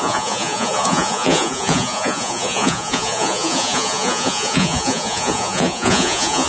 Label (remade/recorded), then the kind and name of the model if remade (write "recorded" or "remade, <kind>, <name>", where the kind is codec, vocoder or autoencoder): remade, vocoder, Vocos